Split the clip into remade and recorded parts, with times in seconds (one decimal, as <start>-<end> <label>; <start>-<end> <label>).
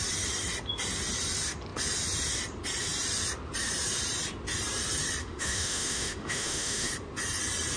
0.0-5.2 recorded; 5.2-6.9 remade; 6.9-7.8 recorded